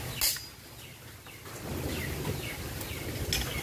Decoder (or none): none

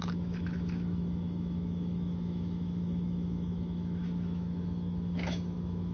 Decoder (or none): autoencoder, DAC-VAE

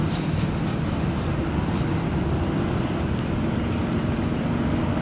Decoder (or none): none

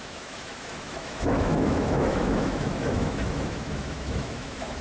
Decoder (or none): autoencoder, DAC-VAE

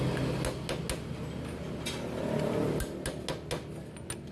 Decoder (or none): none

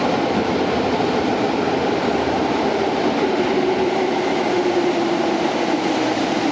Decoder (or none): vocoder, BigVGAN v2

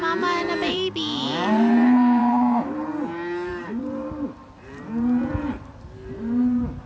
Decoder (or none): vocoder, BigVGAN v2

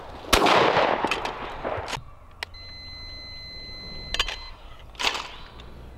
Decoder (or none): none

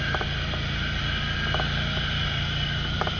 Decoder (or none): none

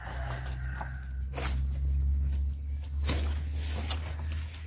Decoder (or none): none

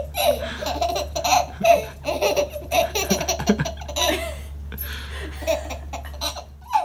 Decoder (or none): none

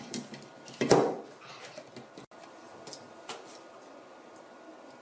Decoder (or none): none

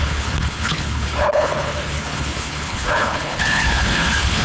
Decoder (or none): codec, HILCodec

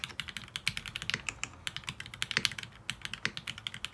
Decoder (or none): none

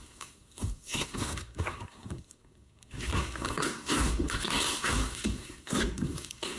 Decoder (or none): codec, SNAC